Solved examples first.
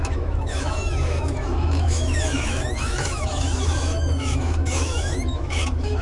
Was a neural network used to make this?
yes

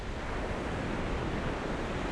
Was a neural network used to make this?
no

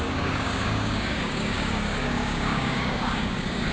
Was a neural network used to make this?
yes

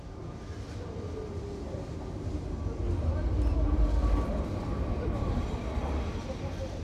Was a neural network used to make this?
no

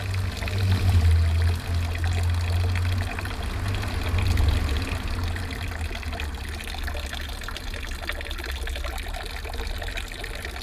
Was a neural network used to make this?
no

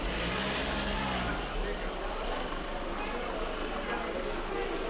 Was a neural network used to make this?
no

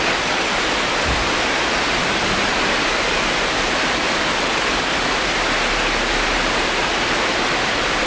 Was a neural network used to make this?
no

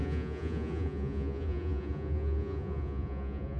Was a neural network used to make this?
yes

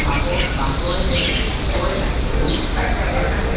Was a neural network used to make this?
no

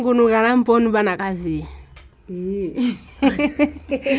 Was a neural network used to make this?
no